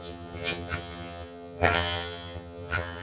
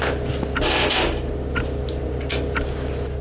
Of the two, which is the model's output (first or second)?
first